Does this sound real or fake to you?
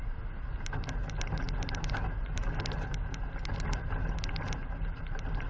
real